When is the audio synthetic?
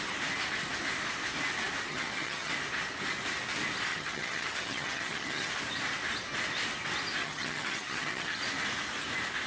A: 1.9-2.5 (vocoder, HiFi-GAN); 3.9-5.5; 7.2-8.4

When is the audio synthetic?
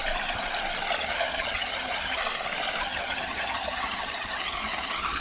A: 1.0-2.2 (vocoder, HiFi-GAN); 2.8-5.2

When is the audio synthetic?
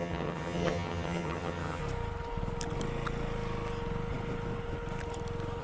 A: 0.0-1.8 (vocoder, HiFi-GAN)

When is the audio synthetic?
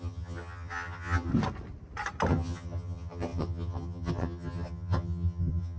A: 0.0-1.3 (vocoder, HiFi-GAN); 2.3-5.8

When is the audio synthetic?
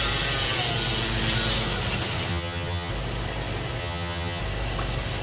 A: 2.3-2.9 (vocoder, HiFi-GAN); 3.8-4.4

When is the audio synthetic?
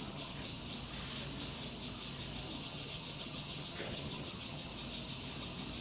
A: 0.0-0.6 (vocoder, HiFi-GAN); 2.6-4.7